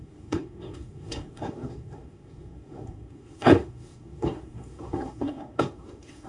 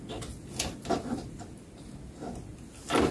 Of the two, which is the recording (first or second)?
second